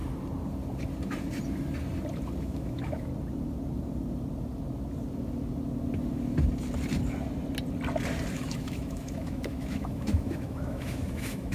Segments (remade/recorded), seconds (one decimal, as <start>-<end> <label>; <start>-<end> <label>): 0.0-2.4 recorded; 2.4-3.1 remade; 3.1-8.3 recorded; 8.3-11.5 remade